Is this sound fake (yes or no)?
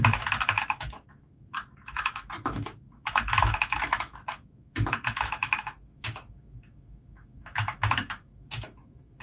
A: yes